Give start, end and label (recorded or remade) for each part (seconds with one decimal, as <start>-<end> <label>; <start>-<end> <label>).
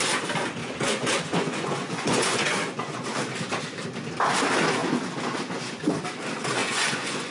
0.0-0.6 recorded; 0.6-3.0 remade; 3.0-6.6 recorded; 6.6-7.3 remade